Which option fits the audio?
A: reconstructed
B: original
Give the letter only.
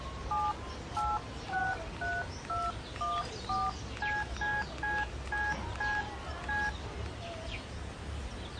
B